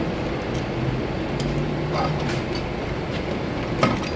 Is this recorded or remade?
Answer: recorded